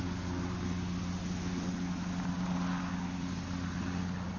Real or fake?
real